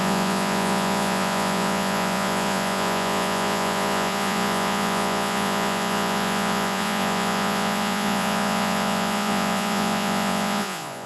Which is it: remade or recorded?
remade